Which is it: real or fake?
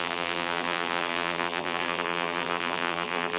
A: fake